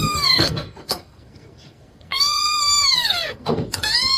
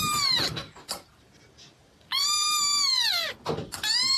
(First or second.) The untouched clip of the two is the second